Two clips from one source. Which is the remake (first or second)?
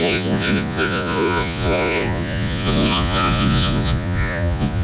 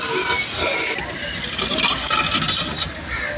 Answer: first